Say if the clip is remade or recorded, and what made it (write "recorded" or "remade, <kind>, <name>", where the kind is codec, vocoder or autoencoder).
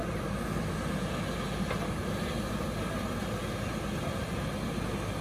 recorded